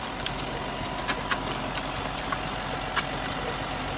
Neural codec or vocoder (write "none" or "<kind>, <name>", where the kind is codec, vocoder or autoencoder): none